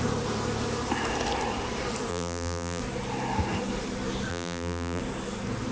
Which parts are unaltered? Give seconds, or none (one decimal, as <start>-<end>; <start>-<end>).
0.0-2.1; 2.8-4.3; 5.0-5.7